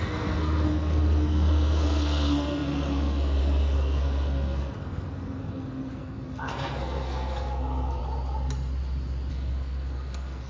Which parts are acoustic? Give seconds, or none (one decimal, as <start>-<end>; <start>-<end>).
8.0-9.3